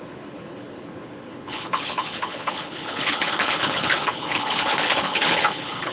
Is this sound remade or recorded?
remade